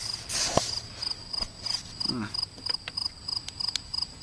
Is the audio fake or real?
real